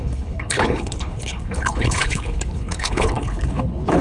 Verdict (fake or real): fake